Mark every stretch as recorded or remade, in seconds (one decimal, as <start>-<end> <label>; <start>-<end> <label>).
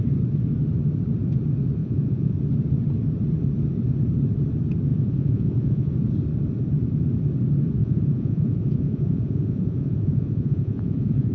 0.0-1.8 recorded; 1.8-2.4 remade; 2.4-4.9 recorded; 4.9-5.9 remade; 5.9-7.8 recorded; 7.8-11.3 remade